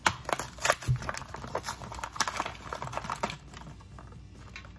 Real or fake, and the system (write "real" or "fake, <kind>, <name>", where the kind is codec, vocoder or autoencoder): real